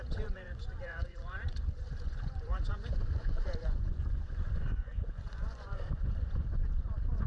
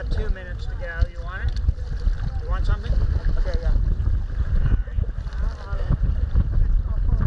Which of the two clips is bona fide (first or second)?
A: second